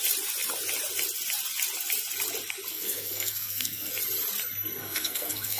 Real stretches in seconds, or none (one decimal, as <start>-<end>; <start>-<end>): 0.0-2.7; 3.9-4.8